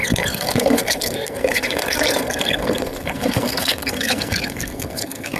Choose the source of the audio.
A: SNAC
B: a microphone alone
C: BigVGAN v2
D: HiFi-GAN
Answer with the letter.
A